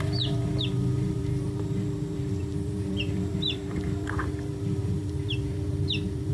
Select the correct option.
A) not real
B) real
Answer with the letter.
A